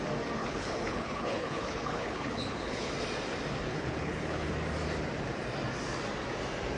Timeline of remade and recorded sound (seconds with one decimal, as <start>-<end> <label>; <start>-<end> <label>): 0.0-0.4 recorded; 0.4-2.9 remade; 2.9-3.7 recorded; 3.7-4.5 remade; 4.5-6.8 recorded